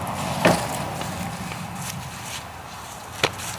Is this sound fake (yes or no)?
no